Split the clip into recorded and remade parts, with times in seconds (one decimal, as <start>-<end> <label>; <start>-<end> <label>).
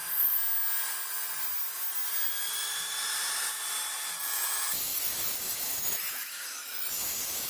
0.0-4.2 recorded; 4.2-7.5 remade